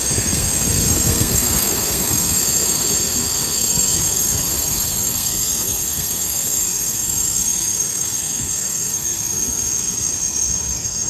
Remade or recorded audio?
remade